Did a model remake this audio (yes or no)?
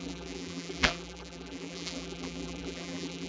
yes